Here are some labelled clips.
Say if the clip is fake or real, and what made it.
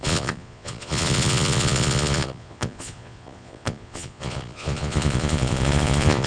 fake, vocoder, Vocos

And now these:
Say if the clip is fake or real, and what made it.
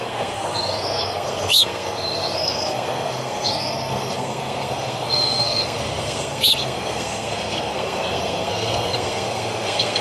fake, codec, SNAC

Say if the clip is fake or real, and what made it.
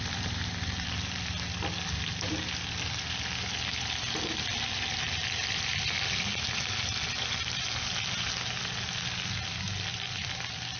real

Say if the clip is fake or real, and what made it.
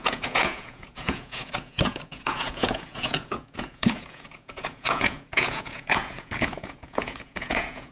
fake, vocoder, Vocos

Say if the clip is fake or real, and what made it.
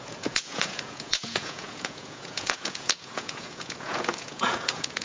fake, vocoder, Vocos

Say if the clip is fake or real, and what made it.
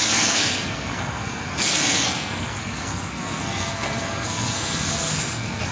fake, codec, SNAC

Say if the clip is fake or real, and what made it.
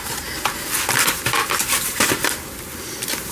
real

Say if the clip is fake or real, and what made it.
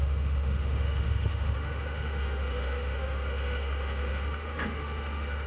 fake, autoencoder, DAC-VAE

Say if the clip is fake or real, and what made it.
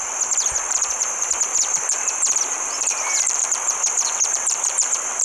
fake, vocoder, BigVGAN v2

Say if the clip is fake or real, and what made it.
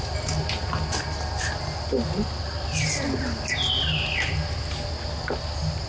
real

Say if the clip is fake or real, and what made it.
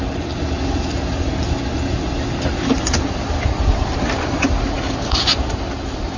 real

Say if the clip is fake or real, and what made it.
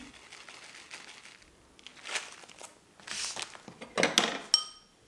real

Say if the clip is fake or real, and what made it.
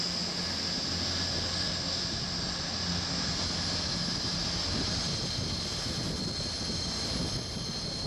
real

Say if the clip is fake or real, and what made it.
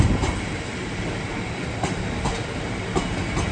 real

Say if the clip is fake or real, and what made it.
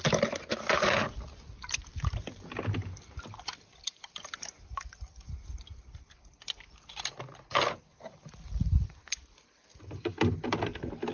real